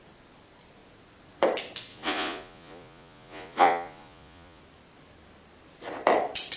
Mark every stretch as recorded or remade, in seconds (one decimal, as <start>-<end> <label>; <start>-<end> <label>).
0.0-1.9 recorded; 1.9-4.6 remade; 4.6-6.6 recorded